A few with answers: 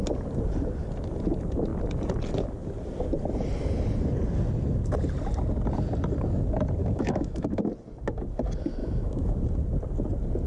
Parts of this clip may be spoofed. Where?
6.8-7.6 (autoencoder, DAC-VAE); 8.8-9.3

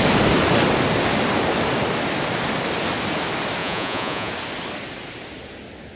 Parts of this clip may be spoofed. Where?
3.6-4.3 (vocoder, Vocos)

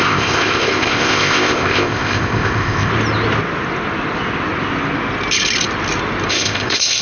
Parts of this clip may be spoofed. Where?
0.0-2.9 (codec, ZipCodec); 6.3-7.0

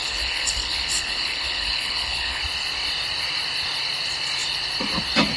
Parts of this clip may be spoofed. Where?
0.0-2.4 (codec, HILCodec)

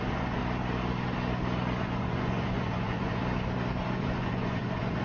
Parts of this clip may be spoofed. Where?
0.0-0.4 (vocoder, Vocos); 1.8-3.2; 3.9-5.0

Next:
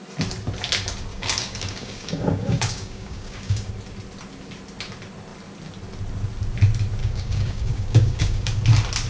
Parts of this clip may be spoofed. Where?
1.1-3.7 (codec, DAC); 7.0-8.6

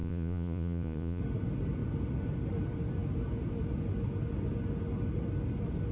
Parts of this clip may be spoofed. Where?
0.0-1.2 (vocoder, Vocos)

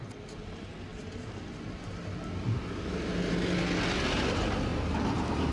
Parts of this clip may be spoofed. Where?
none